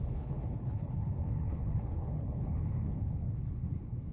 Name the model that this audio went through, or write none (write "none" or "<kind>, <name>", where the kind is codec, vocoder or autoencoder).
codec, HILCodec